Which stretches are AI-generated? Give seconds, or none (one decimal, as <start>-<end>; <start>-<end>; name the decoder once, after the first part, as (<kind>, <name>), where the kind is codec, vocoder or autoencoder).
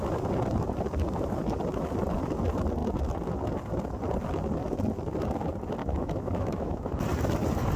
5.8-6.9 (autoencoder, DAC-VAE)